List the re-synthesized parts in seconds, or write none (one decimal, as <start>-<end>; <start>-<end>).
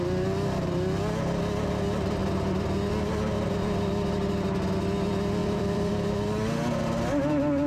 2.2-3.1; 5.4-5.9